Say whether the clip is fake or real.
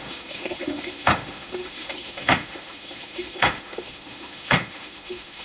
fake